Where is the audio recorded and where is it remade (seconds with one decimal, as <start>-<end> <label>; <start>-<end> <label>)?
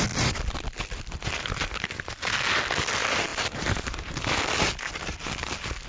0.0-3.3 recorded; 3.3-4.4 remade; 4.4-5.9 recorded